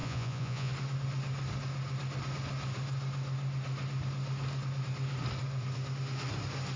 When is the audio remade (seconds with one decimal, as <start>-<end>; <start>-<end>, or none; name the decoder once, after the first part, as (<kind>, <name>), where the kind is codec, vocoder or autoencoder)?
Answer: 0.0-0.7 (vocoder, Vocos)